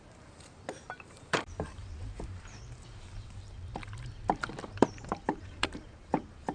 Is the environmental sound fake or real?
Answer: fake